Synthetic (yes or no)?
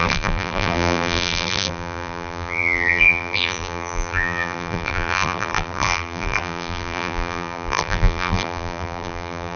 yes